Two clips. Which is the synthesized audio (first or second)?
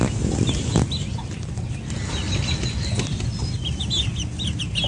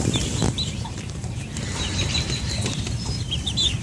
second